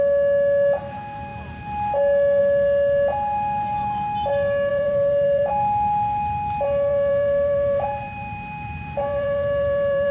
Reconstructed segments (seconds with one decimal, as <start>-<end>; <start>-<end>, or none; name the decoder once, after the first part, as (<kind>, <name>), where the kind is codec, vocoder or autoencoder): 4.7-5.5 (vocoder, BigVGAN v2); 6.9-10.1